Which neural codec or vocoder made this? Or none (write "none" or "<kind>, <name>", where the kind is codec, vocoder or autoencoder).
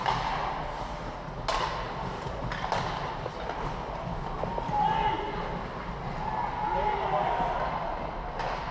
none